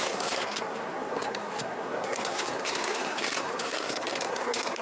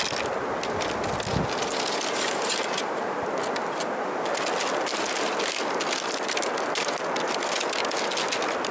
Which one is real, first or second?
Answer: second